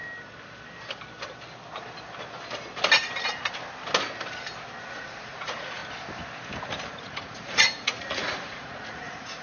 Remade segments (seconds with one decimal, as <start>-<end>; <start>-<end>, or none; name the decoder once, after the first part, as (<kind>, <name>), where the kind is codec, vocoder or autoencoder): 4.9-5.8 (vocoder, Vocos); 6.9-9.4